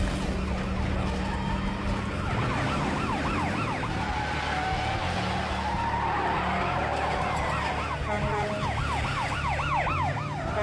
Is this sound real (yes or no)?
yes